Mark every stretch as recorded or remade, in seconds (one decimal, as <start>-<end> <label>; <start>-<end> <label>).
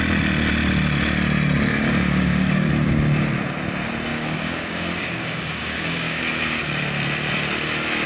0.0-1.7 recorded; 1.7-2.7 remade; 2.7-4.1 recorded; 4.1-6.2 remade; 6.2-8.1 recorded